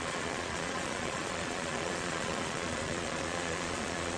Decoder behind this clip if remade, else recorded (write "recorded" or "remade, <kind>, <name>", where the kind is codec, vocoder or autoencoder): remade, vocoder, Vocos